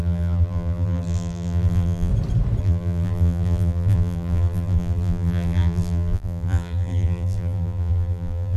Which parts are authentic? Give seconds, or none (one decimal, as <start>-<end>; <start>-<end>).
2.1-2.6